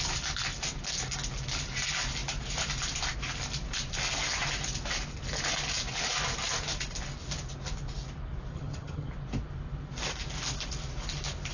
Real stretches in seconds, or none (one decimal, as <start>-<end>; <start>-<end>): 0.0-8.5; 9.1-11.5